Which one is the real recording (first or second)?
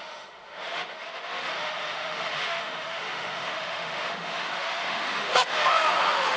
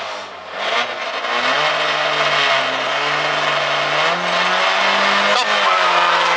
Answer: second